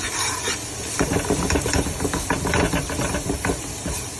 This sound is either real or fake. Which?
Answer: real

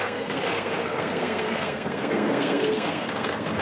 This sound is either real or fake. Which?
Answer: fake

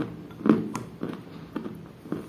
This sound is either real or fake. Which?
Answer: real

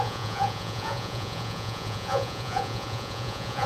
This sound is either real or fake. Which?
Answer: fake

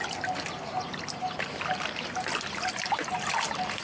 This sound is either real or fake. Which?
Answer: real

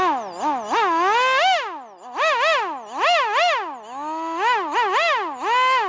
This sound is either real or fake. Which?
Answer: real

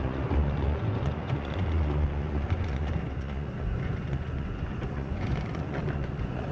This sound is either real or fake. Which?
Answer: fake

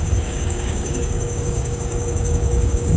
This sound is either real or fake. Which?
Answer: fake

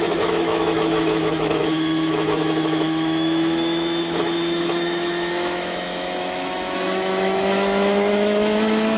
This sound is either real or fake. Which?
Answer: fake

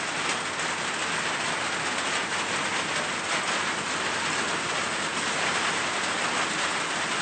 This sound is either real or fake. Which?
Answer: real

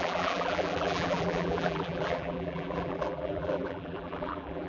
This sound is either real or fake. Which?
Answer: fake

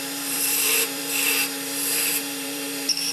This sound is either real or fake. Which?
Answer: fake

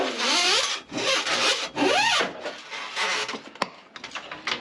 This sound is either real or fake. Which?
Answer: real